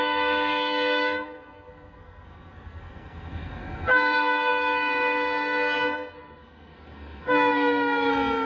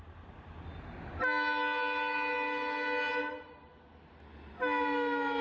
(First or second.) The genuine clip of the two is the second